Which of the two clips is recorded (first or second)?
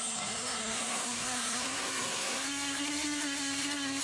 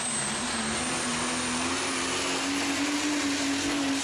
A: second